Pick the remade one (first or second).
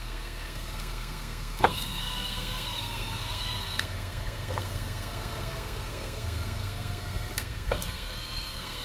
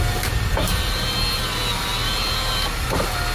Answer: first